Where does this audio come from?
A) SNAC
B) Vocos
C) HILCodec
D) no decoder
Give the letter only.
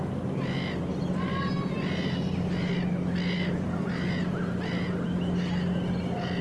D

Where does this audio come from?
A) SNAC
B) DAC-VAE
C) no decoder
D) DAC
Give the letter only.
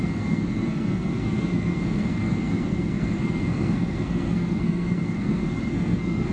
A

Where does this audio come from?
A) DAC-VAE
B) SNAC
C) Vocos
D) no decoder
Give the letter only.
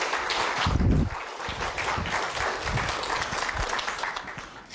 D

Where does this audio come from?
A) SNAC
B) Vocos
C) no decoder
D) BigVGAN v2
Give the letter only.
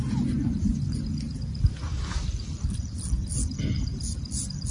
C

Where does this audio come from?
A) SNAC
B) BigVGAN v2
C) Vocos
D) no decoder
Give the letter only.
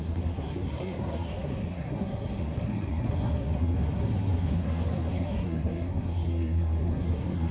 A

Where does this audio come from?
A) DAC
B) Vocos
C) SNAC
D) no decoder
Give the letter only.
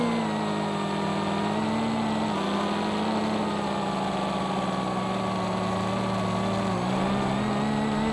D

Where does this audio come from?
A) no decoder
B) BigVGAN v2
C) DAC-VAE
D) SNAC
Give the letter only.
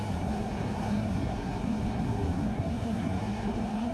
D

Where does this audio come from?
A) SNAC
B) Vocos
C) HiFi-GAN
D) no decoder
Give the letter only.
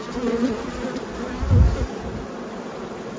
D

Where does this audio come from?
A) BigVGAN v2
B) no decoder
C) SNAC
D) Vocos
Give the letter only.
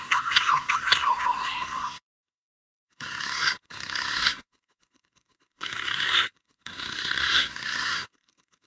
C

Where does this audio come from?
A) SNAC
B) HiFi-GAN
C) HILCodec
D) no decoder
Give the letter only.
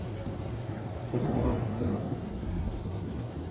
A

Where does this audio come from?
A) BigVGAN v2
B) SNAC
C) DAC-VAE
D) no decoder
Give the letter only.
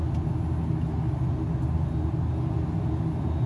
D